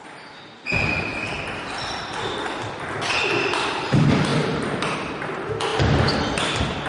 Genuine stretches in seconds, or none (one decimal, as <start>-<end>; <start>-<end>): 5.7-6.9